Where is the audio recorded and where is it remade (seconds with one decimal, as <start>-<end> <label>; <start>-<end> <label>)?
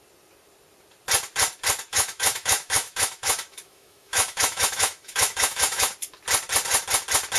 0.0-1.9 recorded; 1.9-5.9 remade; 5.9-7.4 recorded